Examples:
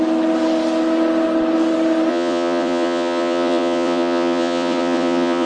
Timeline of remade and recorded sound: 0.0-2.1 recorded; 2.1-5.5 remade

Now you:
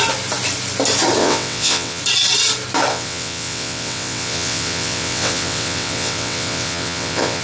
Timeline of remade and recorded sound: 0.0-1.2 recorded; 1.2-2.0 remade; 2.0-2.9 recorded; 2.9-7.4 remade

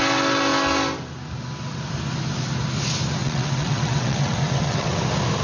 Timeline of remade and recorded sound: 0.0-3.2 recorded; 3.2-5.0 remade; 5.0-5.4 recorded

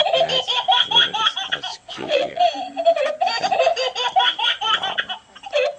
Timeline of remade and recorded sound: 0.0-1.7 recorded; 1.7-2.4 remade; 2.4-5.8 recorded

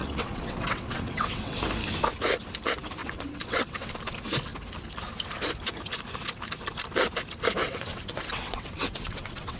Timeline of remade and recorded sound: 0.0-1.6 remade; 1.6-3.0 recorded; 3.0-3.9 remade; 3.9-7.6 recorded; 7.6-9.6 remade

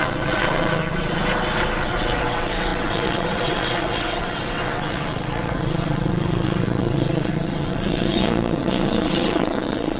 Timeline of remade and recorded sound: 0.0-1.2 remade; 1.2-1.8 recorded; 1.8-10.0 remade

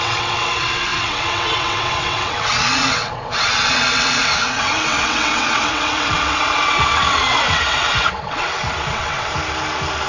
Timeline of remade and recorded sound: 0.0-9.3 remade; 9.3-10.1 recorded

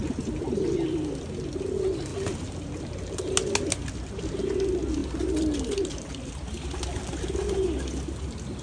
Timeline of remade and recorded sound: 0.0-8.6 recorded